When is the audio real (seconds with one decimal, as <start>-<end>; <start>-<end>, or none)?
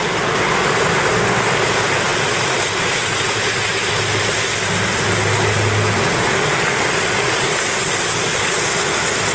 0.0-2.1; 3.9-9.3